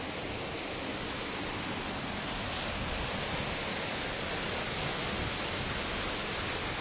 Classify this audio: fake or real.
real